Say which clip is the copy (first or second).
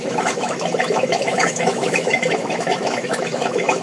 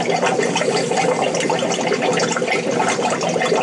first